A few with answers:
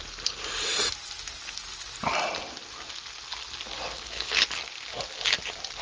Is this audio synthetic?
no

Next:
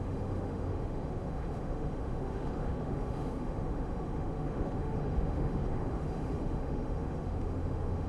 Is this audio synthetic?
yes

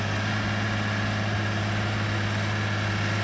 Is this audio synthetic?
no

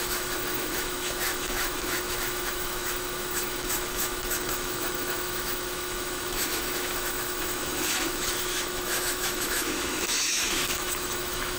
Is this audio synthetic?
yes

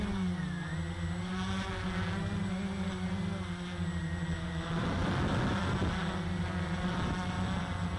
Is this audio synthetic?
no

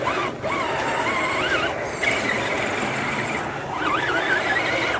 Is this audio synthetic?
no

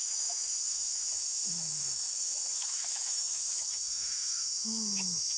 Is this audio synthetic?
yes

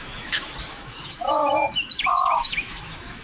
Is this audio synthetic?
yes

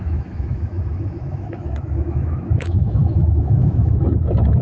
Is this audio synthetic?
yes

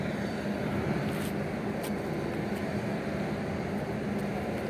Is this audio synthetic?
no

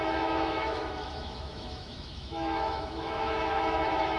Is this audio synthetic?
yes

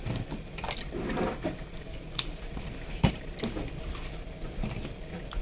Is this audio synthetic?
no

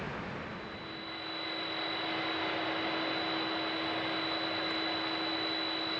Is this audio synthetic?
no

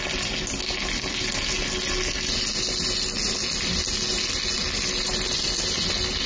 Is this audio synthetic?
no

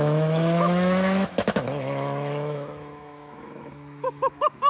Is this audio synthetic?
yes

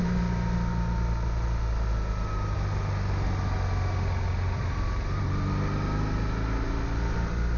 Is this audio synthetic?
no